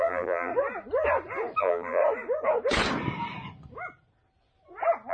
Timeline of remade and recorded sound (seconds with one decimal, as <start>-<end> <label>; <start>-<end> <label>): 0.0-0.5 remade; 0.5-1.6 recorded; 1.6-2.0 remade; 2.0-5.1 recorded